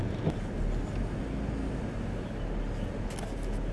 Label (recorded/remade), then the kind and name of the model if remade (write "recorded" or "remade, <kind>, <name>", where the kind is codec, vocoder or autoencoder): recorded